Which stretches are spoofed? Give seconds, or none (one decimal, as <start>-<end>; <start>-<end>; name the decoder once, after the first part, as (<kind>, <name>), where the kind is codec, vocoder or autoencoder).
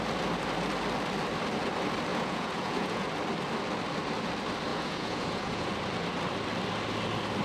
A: 2.1-3.1 (vocoder, Vocos); 4.7-5.7